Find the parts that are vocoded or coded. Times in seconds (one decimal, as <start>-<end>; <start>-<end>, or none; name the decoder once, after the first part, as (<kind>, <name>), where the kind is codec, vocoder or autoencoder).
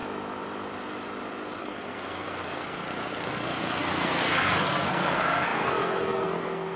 1.6-6.8 (codec, SNAC)